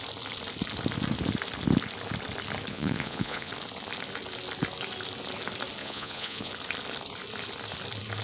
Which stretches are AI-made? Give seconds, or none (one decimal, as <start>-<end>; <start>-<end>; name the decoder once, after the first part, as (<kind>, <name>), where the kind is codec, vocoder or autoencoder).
2.7-3.5 (vocoder, Vocos); 5.8-6.5